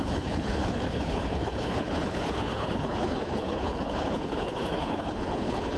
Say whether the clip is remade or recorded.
remade